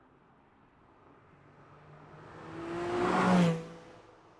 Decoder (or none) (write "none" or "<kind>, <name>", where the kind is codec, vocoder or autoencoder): none